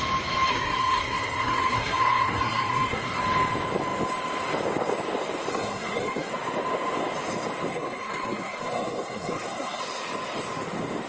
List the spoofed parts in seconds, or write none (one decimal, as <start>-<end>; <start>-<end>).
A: 0.5-3.2; 5.5-6.3; 7.7-9.8